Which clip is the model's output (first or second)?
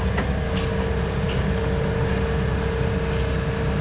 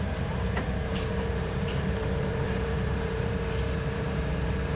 second